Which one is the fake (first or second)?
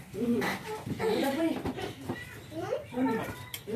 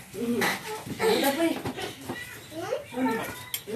first